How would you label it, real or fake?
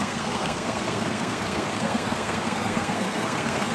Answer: fake